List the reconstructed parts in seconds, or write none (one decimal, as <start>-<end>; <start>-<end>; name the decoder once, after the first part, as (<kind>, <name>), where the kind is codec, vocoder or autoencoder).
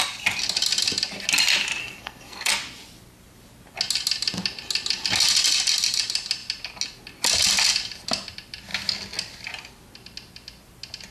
1.8-2.5 (codec, SNAC)